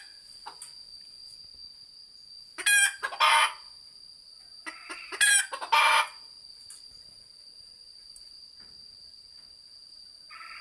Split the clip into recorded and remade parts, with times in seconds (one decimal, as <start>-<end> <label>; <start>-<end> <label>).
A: 0.0-10.6 recorded